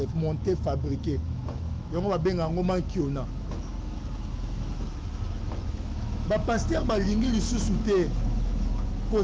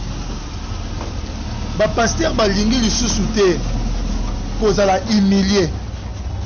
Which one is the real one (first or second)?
second